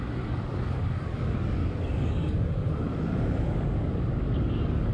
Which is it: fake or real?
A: fake